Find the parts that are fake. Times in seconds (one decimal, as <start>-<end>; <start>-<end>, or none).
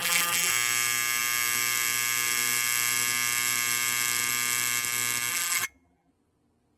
0.0-0.5; 5.3-6.1